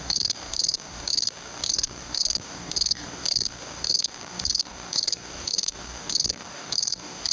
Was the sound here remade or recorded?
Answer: remade